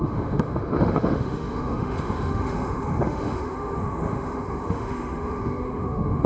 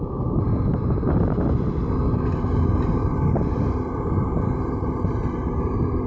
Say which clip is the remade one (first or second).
first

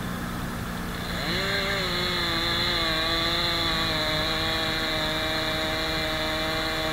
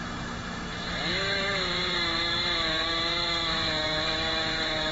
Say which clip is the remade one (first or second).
second